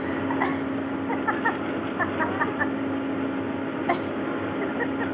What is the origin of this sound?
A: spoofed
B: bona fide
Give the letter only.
B